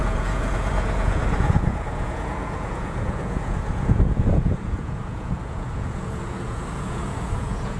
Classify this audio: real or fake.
fake